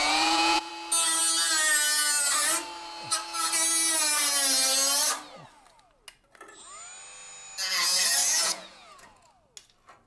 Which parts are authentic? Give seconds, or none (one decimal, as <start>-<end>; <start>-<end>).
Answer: 0.7-8.2; 9.3-10.1